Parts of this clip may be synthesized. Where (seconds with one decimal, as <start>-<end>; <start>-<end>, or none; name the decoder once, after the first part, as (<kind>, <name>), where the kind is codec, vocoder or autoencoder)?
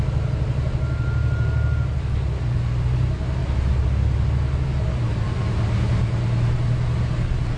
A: none